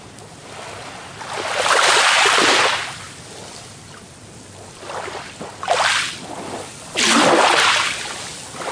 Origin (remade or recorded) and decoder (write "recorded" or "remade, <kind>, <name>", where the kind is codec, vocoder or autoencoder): recorded